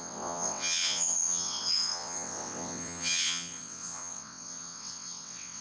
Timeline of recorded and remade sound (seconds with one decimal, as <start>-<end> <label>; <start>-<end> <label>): 0.0-5.6 remade